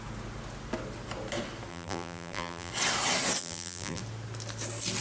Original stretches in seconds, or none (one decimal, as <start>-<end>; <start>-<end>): 0.0-1.7; 2.7-3.4; 4.0-5.0